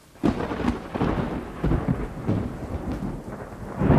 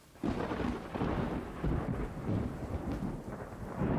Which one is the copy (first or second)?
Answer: second